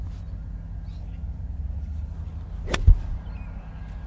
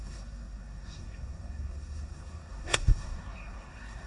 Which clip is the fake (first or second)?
second